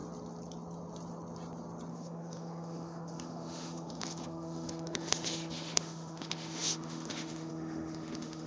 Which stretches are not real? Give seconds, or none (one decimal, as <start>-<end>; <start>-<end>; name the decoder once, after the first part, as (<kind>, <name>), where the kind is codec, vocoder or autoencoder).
1.9-8.5 (autoencoder, DAC-VAE)